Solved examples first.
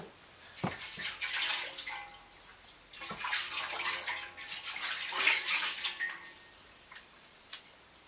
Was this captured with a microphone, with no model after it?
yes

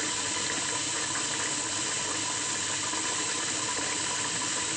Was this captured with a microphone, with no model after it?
yes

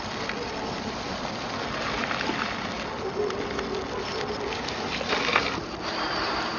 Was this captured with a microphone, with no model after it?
yes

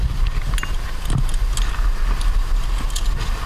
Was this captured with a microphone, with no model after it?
yes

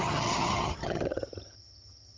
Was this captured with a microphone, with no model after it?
no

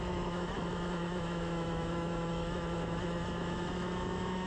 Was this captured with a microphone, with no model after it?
no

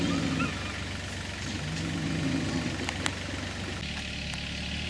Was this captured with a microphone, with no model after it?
yes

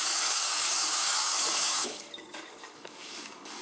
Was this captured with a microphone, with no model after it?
no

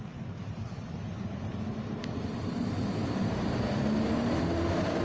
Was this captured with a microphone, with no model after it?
yes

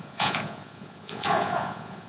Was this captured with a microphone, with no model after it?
no